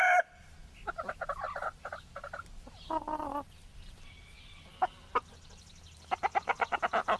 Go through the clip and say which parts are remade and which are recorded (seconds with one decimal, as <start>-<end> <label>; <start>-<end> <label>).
0.0-7.2 recorded